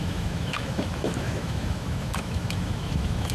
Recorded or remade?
remade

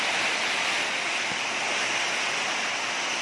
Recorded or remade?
recorded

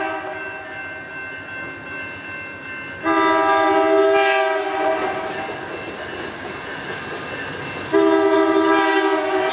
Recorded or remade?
recorded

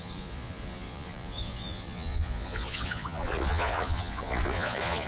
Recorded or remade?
remade